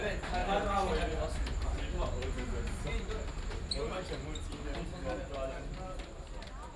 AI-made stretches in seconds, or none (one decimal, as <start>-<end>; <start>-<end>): none